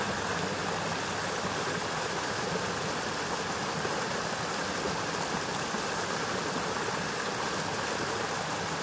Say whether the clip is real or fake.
real